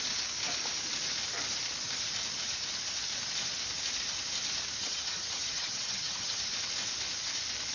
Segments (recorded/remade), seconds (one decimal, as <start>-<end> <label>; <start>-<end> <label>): 0.0-4.8 recorded; 4.8-6.4 remade; 6.4-7.7 recorded